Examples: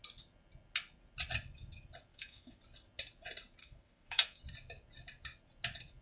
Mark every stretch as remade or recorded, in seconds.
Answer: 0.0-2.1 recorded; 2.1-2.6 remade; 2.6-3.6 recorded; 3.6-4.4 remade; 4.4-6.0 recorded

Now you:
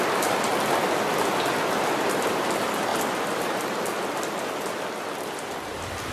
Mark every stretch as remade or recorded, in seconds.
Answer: 0.0-6.1 recorded

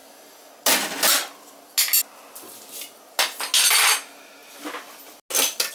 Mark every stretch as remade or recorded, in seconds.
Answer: 0.0-5.7 recorded